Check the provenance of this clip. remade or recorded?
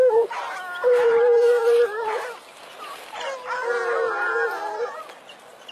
recorded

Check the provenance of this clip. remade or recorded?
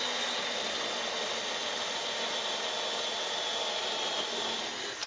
recorded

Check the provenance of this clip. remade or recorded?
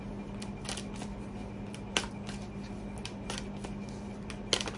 recorded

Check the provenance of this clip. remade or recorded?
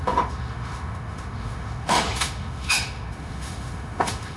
remade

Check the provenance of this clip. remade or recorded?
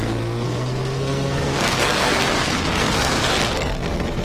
remade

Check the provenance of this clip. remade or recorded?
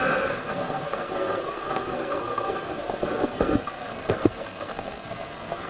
remade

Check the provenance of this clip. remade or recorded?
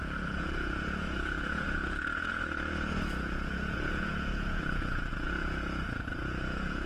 remade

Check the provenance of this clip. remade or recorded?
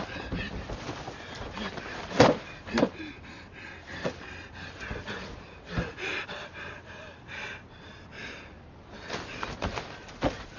recorded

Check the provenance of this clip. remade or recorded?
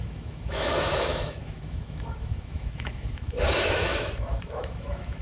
remade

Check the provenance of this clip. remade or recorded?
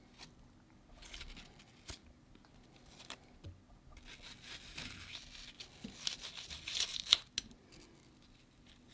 recorded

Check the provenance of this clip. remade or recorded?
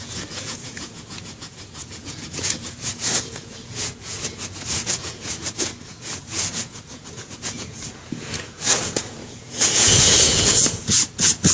remade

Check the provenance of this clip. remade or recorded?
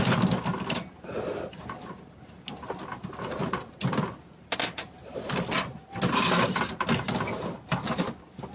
recorded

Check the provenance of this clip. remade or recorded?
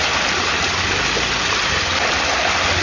recorded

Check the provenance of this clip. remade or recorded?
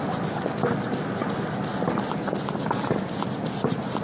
recorded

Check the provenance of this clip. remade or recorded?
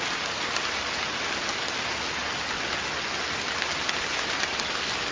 recorded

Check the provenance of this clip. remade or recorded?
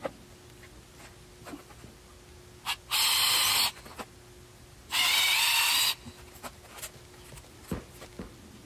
recorded